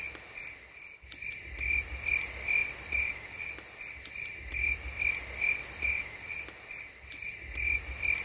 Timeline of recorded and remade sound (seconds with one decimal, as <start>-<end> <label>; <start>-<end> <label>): 0.0-8.2 recorded

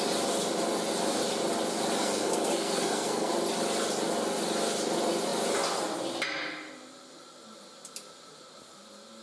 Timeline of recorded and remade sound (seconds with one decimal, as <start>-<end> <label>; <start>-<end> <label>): 0.0-2.0 recorded; 2.0-3.3 remade; 3.3-9.2 recorded

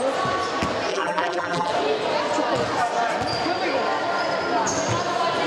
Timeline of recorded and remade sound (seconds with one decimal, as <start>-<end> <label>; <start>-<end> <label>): 0.0-0.9 recorded; 0.9-1.7 remade; 1.7-5.5 recorded

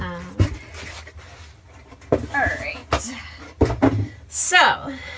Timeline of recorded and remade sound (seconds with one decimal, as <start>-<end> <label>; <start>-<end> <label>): 0.0-5.2 recorded

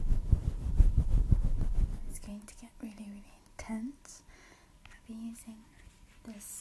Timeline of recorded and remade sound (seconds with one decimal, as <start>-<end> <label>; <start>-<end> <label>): 0.0-6.6 recorded

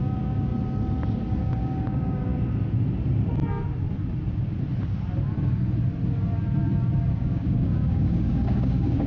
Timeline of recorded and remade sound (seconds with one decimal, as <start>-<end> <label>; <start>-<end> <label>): 0.0-0.5 remade; 0.5-1.4 recorded; 1.4-2.3 remade; 2.3-7.1 recorded; 7.1-9.1 remade

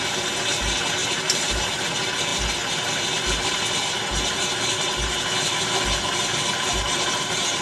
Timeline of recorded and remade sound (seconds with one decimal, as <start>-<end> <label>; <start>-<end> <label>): 0.0-1.0 recorded; 1.0-1.8 remade; 1.8-7.6 recorded

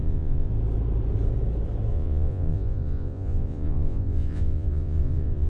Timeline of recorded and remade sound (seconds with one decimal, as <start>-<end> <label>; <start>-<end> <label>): 0.0-0.5 remade; 0.5-1.9 recorded; 1.9-5.5 remade